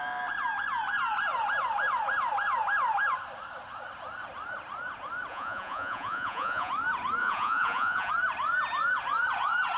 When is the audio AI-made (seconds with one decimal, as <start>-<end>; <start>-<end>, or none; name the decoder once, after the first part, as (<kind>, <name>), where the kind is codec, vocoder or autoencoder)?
5.3-6.7 (vocoder, Vocos); 7.2-8.1